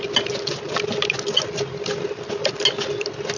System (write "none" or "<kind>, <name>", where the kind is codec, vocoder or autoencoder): none